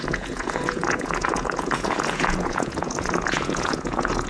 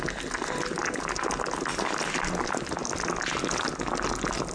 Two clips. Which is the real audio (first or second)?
second